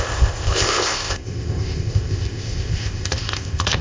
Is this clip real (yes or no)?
no